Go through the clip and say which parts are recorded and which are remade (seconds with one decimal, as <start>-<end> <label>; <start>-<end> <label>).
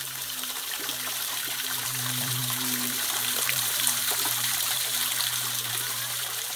0.0-0.9 remade; 0.9-1.8 recorded; 1.8-5.0 remade; 5.0-5.7 recorded; 5.7-6.6 remade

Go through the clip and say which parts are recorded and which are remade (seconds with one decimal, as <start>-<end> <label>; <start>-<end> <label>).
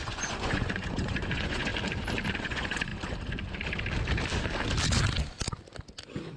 0.0-1.7 remade; 1.7-2.4 recorded; 2.4-2.9 remade; 2.9-6.4 recorded